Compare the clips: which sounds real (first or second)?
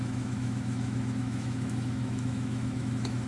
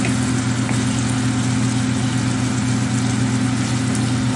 second